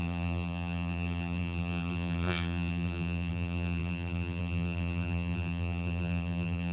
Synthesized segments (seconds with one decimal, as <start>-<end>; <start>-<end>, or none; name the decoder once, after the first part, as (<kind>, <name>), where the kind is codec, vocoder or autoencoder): 0.0-6.7 (vocoder, BigVGAN v2)